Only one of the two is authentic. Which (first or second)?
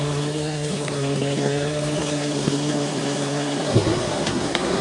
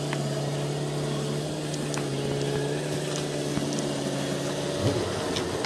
second